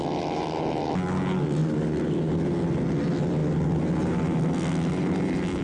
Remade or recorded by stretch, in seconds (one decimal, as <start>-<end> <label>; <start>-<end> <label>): 0.0-5.6 recorded